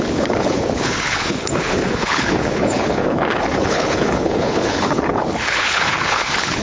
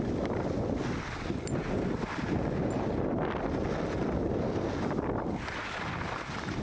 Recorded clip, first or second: second